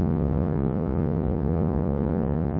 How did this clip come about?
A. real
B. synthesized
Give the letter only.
B